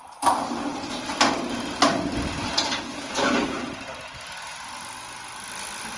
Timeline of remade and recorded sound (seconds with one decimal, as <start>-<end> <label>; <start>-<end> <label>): 0.0-6.0 recorded